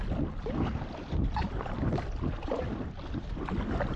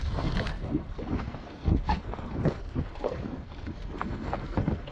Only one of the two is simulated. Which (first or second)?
second